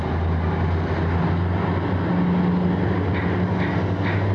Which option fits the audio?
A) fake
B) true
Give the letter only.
B